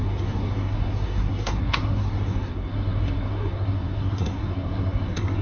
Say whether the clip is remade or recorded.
remade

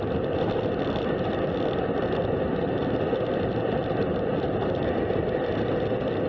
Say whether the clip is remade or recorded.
recorded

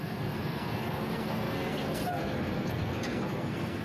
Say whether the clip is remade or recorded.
remade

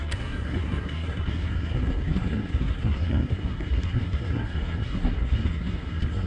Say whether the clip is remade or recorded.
remade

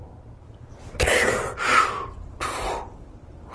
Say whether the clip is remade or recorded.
recorded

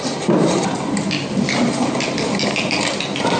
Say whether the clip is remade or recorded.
recorded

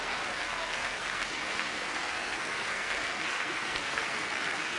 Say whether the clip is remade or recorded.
remade